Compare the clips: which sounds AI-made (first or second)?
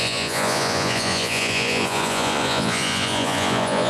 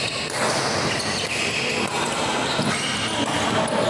first